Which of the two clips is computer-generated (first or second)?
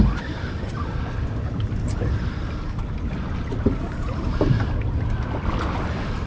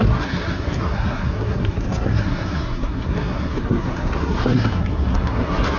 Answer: second